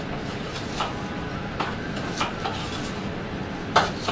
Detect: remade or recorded recorded